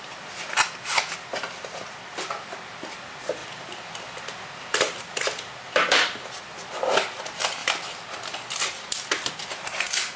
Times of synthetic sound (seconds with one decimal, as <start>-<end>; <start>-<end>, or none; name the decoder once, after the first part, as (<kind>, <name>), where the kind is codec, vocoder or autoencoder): 3.4-6.4 (vocoder, BigVGAN v2); 7.6-9.5